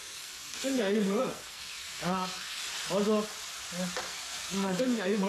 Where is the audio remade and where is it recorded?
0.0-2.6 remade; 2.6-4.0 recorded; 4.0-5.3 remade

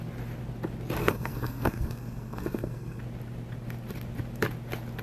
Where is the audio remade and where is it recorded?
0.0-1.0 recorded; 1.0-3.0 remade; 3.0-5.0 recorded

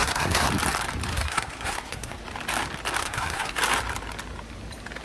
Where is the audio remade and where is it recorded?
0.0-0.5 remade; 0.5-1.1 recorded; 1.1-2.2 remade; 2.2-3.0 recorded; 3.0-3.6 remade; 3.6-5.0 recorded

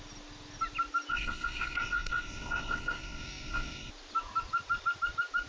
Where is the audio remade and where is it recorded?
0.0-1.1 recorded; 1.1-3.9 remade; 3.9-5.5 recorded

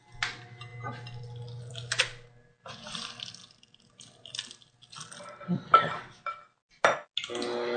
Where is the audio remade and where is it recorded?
0.0-7.8 recorded

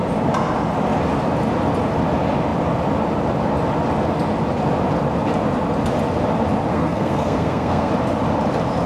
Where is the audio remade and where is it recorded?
0.0-6.7 recorded; 6.7-7.9 remade; 7.9-8.9 recorded

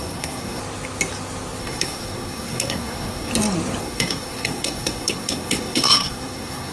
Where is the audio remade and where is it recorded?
0.0-0.6 remade; 0.6-1.6 recorded; 1.6-3.3 remade; 3.3-3.8 recorded; 3.8-6.7 remade

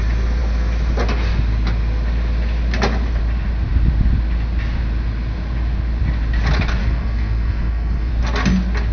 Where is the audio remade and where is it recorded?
0.0-6.8 recorded; 6.8-8.1 remade; 8.1-8.9 recorded